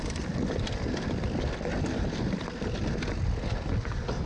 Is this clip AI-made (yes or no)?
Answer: no